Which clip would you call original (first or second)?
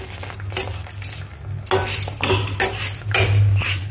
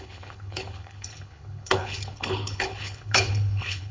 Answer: first